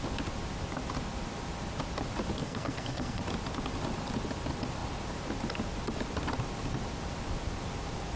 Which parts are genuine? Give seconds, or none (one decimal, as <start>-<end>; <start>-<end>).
0.0-2.4; 3.2-8.2